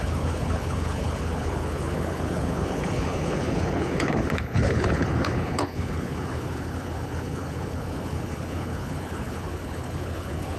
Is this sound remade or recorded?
remade